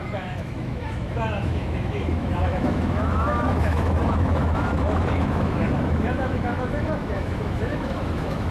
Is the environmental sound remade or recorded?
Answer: remade